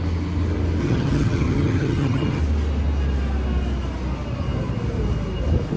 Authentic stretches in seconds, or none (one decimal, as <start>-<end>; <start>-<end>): 0.0-0.8; 2.4-5.8